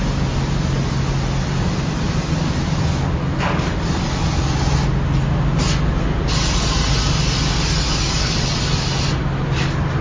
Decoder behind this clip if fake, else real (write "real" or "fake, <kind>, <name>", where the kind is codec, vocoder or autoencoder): real